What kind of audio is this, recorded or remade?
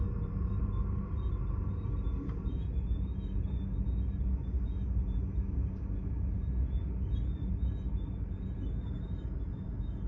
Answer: recorded